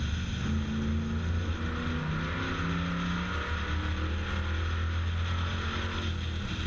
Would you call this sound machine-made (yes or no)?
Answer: no